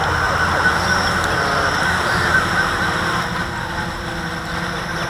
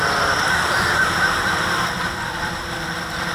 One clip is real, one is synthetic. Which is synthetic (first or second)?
second